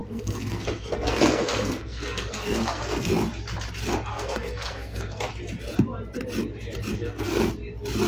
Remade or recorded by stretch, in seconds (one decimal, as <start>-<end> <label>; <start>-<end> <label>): 0.0-3.1 remade; 3.1-4.1 recorded; 4.1-5.3 remade; 5.3-6.9 recorded; 6.9-7.5 remade; 7.5-8.1 recorded